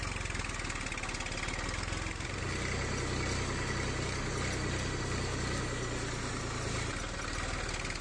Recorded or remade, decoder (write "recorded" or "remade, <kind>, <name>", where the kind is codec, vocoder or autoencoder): recorded